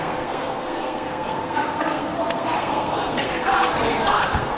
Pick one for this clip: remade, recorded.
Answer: remade